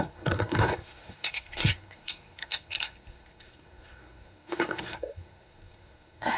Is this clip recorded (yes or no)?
no